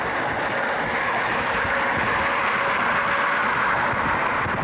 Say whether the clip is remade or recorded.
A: recorded